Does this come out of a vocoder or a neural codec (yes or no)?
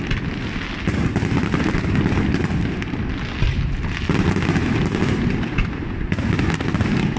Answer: no